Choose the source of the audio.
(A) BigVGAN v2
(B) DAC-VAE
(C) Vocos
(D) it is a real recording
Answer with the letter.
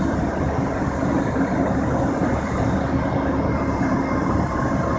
D